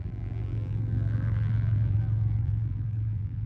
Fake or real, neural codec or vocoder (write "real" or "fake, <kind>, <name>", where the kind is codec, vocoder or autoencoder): fake, vocoder, BigVGAN v2